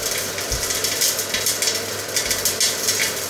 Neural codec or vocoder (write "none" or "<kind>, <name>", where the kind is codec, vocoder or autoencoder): none